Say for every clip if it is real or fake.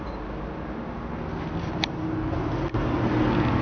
real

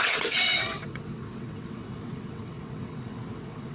fake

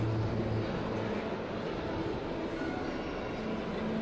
real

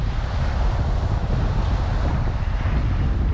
real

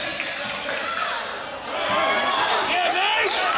real